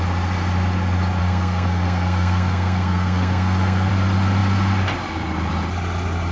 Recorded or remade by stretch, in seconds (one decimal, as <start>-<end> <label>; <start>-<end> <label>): 0.0-1.2 recorded; 1.2-3.9 remade; 3.9-6.3 recorded